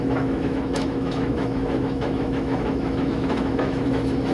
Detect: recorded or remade remade